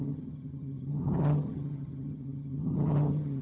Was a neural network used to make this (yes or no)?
yes